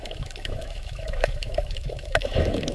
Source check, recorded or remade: remade